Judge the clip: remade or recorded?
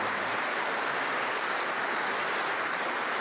recorded